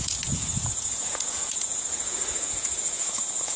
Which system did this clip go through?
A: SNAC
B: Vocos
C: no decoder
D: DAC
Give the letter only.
B